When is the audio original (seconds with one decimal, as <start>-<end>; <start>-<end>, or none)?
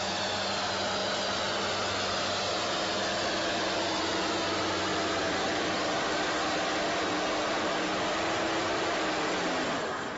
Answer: 0.0-1.0; 1.6-4.9; 7.3-10.2